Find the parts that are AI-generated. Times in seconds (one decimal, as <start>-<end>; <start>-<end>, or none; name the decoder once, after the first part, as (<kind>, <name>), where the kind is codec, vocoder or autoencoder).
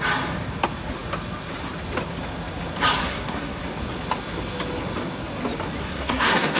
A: 3.0-3.6 (codec, SNAC); 5.8-6.6